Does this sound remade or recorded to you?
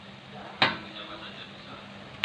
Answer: recorded